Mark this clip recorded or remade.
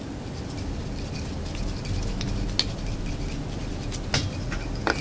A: recorded